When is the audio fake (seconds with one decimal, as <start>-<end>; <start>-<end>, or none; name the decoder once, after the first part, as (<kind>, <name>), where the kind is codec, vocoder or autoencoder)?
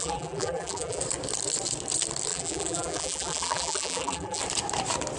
0.0-1.0 (vocoder, BigVGAN v2); 2.3-4.4